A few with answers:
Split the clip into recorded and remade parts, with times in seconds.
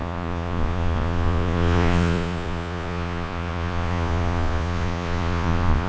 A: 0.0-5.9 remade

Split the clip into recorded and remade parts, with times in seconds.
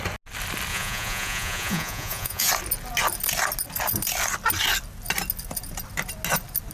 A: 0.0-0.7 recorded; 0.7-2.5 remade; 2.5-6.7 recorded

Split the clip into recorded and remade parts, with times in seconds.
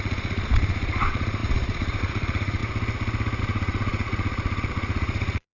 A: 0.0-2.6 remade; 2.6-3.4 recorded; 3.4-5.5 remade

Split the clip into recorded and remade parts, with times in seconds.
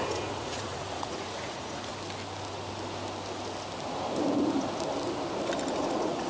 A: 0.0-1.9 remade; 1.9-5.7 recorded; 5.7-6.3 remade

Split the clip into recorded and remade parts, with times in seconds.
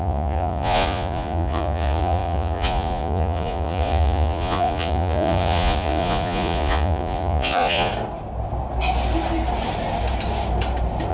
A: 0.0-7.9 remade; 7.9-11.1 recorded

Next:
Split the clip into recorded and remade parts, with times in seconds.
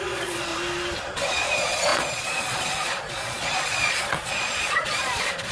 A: 0.0-0.5 remade; 0.5-1.3 recorded; 1.3-5.5 remade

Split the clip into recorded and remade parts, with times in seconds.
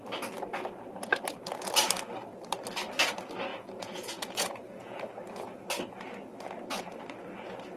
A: 0.0-3.5 recorded; 3.5-5.0 remade; 5.0-7.8 recorded